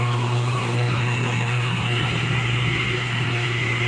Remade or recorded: remade